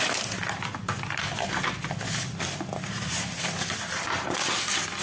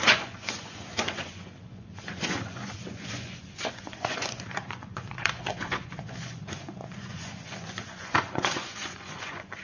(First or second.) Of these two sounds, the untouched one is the first